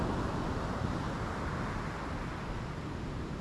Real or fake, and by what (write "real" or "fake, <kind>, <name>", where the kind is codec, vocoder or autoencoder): real